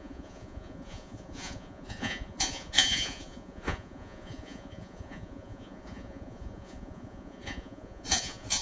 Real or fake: fake